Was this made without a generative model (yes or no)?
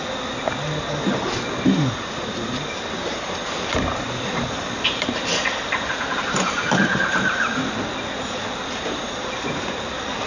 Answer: yes